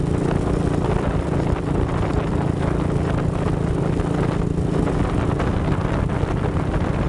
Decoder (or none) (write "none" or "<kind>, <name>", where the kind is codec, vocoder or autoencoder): none